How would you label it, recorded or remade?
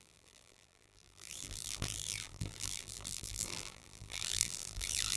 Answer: remade